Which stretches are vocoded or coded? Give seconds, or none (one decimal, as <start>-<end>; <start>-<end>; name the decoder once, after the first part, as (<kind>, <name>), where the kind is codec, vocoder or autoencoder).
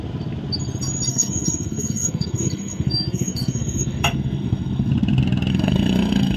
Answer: 1.1-4.9 (codec, SNAC); 5.5-6.4